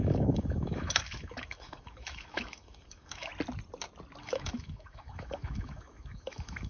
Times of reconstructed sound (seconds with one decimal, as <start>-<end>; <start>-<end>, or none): 0.0-3.3; 4.2-6.7